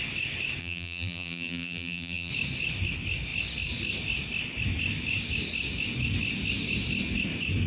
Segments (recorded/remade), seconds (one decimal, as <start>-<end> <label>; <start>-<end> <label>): 0.0-0.6 recorded; 0.6-2.3 remade; 2.3-7.7 recorded